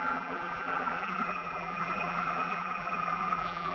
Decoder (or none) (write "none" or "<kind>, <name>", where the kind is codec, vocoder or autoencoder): vocoder, BigVGAN v2